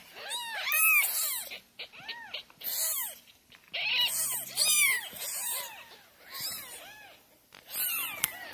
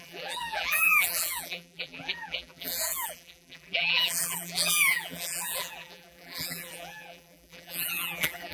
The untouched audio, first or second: first